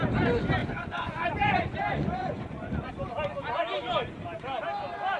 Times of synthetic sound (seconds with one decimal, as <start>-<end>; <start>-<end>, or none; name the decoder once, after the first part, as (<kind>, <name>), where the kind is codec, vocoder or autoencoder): 0.6-2.9 (vocoder, Vocos)